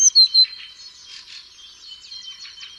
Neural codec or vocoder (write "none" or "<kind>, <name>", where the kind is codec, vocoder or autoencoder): none